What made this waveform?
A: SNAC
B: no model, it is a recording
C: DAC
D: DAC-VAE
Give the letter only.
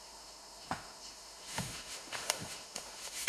D